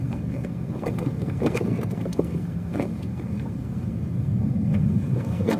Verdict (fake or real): fake